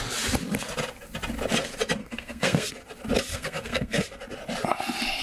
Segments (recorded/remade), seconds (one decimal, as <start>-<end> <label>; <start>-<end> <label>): 0.0-2.0 recorded; 2.0-2.7 remade; 2.7-3.3 recorded; 3.3-4.0 remade; 4.0-5.2 recorded